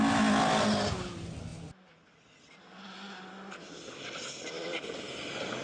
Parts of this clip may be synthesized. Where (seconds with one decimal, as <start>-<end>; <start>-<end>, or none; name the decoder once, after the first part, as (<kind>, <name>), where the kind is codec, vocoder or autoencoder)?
none